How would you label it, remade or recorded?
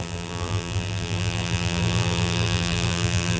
remade